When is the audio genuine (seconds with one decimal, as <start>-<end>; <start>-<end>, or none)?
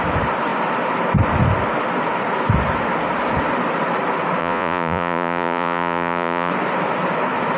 0.0-4.4; 6.5-7.6